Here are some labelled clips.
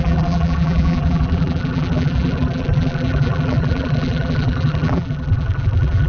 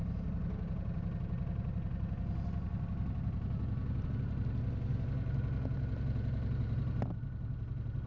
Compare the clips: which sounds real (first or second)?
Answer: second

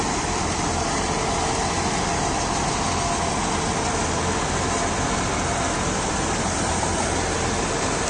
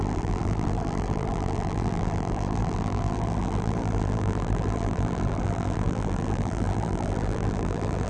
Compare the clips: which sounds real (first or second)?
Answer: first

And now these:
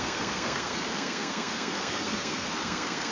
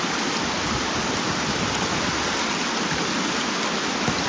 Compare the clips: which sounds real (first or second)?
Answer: second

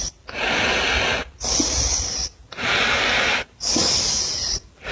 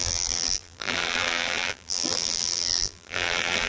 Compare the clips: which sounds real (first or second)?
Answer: first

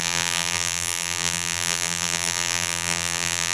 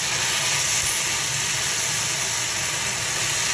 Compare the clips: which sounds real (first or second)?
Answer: second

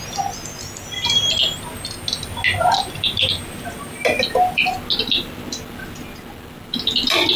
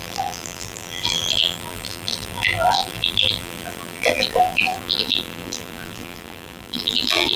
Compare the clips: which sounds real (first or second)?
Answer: first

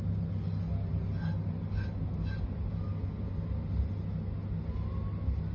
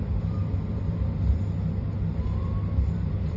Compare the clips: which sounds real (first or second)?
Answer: first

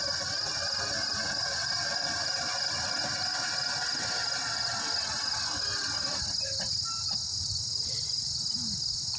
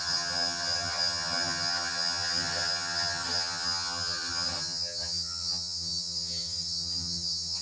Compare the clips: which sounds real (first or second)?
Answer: first